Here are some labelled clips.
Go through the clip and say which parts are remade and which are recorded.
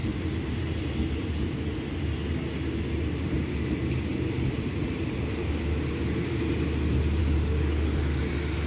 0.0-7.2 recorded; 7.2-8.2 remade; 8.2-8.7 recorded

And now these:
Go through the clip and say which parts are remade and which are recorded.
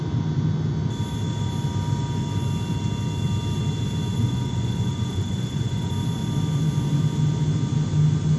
0.0-4.1 recorded; 4.1-5.9 remade; 5.9-8.4 recorded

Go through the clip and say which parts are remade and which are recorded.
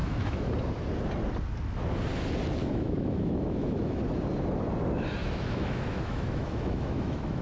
0.0-0.5 remade; 0.5-2.6 recorded; 2.6-4.0 remade; 4.0-5.2 recorded; 5.2-7.4 remade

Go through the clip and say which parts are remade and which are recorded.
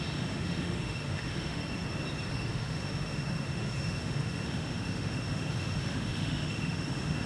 0.0-1.6 remade; 1.6-2.3 recorded; 2.3-7.3 remade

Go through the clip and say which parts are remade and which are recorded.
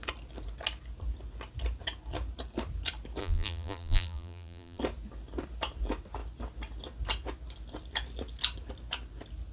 0.0-3.2 recorded; 3.2-4.8 remade; 4.8-9.5 recorded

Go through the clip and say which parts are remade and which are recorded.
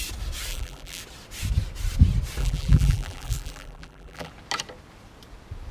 0.0-0.5 recorded; 0.5-1.0 remade; 1.0-2.4 recorded; 2.4-4.3 remade; 4.3-5.7 recorded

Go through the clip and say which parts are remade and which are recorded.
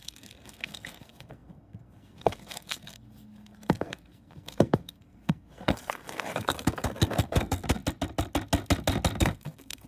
0.0-7.8 remade; 7.8-9.2 recorded; 9.2-9.9 remade